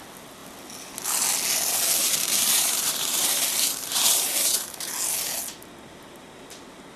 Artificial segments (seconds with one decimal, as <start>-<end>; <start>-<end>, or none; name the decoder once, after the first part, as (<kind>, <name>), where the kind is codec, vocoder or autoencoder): 2.0-4.9 (vocoder, BigVGAN v2)